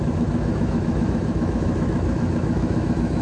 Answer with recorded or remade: remade